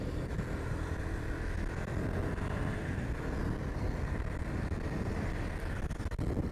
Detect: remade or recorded recorded